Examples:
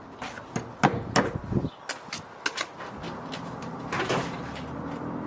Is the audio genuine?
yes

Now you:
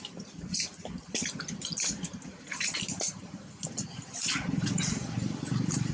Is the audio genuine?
yes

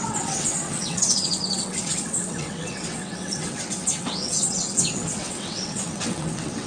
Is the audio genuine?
no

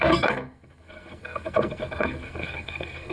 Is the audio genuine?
no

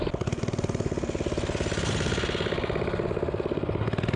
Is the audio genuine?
yes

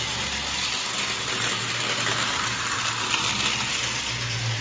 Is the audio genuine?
yes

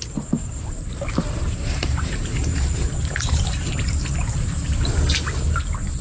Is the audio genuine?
no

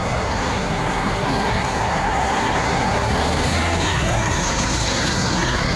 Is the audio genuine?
no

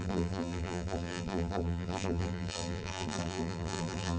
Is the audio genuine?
no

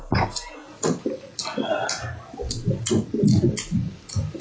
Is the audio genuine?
yes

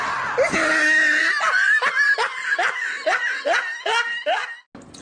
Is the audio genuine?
yes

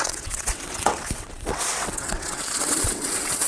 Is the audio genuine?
no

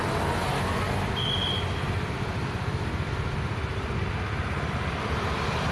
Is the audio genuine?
yes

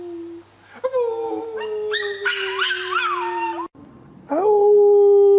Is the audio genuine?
yes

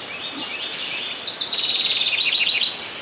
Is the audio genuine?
yes